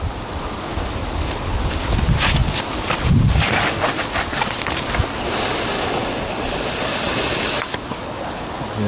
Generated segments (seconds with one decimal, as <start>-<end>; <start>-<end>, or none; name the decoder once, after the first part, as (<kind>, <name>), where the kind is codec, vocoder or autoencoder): none